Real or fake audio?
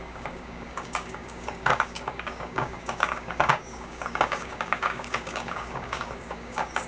fake